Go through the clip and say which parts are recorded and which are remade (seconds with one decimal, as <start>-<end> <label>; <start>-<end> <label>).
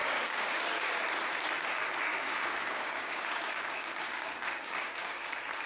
0.0-0.9 remade; 0.9-2.1 recorded; 2.1-5.3 remade; 5.3-5.7 recorded